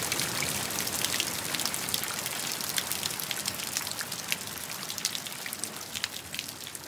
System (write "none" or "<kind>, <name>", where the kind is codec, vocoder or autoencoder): none